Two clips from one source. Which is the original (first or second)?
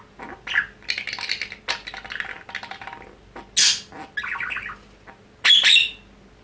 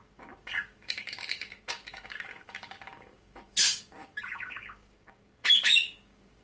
first